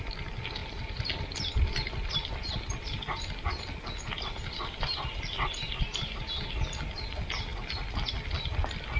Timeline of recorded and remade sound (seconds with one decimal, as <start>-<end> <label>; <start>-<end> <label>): 0.0-9.0 recorded